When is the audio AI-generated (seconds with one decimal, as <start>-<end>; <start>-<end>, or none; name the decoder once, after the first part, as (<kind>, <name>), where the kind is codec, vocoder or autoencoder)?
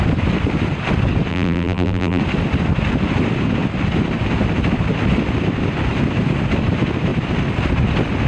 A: 1.3-2.2 (vocoder, BigVGAN v2)